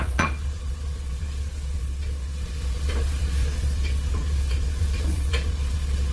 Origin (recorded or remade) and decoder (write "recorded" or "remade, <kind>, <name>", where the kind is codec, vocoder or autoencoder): remade, vocoder, Vocos